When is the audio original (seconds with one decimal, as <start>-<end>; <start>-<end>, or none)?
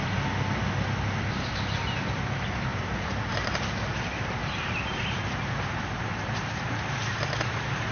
0.0-2.7; 3.6-4.4